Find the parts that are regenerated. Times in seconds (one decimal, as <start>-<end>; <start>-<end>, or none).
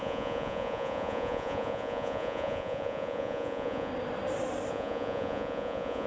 0.0-3.9; 4.7-6.1